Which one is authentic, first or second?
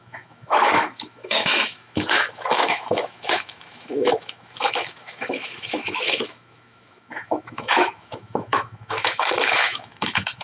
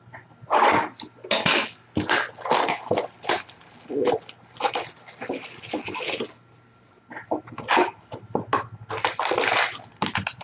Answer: second